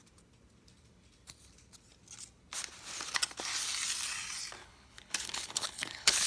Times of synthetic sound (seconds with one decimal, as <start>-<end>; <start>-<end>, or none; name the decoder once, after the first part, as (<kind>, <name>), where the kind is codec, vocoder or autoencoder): 4.6-6.3 (codec, HILCodec)